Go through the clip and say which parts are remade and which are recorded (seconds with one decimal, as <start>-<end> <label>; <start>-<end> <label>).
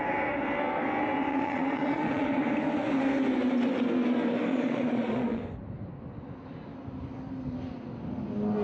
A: 0.0-1.3 recorded; 1.3-2.4 remade; 2.4-4.5 recorded; 4.5-5.4 remade; 5.4-8.6 recorded